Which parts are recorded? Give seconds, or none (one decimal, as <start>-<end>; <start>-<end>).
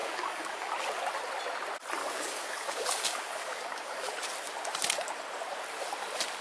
0.7-2.0; 4.1-6.4